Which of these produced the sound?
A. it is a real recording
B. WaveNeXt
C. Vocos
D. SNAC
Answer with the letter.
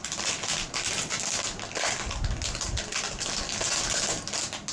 A